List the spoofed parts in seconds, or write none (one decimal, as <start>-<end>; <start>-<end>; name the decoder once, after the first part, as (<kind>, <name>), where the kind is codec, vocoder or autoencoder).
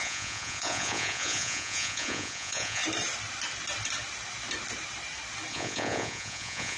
0.0-2.8 (vocoder, Vocos); 5.5-6.8